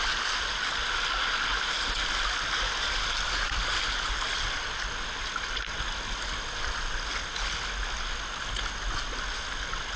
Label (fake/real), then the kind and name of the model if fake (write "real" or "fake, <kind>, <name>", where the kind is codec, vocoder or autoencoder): real